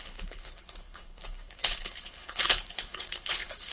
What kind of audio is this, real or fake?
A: fake